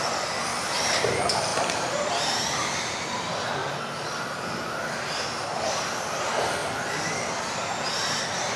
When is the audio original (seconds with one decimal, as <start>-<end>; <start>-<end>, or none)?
0.0-0.5; 1.1-1.5; 3.2-8.6